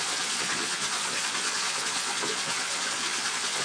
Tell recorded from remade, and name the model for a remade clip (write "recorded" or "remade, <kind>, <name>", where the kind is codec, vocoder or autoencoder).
remade, vocoder, Vocos